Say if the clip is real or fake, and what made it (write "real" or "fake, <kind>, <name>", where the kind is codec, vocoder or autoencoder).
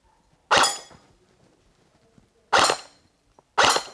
real